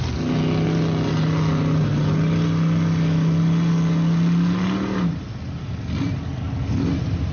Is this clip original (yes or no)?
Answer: yes